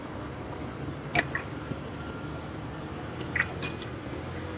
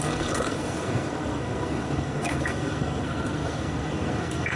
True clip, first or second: first